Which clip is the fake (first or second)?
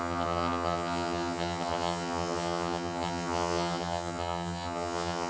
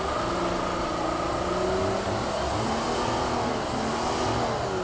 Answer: first